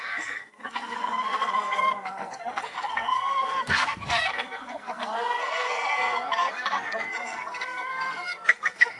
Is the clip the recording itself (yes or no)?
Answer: no